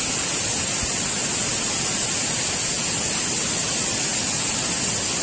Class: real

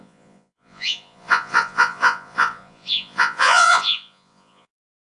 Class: fake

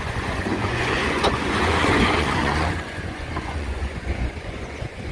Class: fake